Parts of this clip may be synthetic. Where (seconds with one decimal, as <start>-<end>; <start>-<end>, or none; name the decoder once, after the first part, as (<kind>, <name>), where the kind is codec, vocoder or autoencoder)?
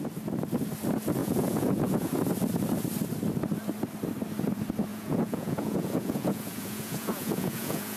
1.2-2.1 (vocoder, Vocos); 4.9-8.0